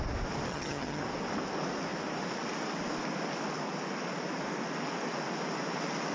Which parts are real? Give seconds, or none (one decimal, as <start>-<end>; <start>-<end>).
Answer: 0.0-0.5; 1.0-6.1